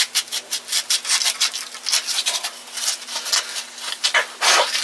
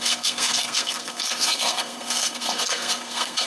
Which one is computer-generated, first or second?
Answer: second